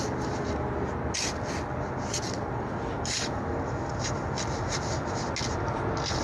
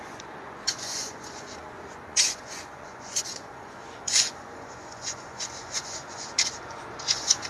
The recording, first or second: first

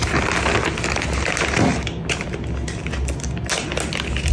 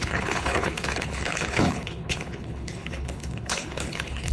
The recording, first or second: first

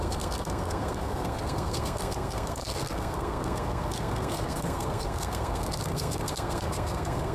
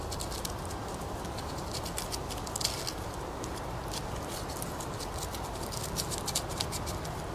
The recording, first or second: second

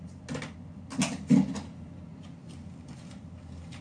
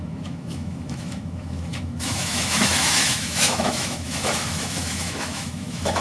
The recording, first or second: first